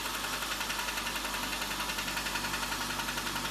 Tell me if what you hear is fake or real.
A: real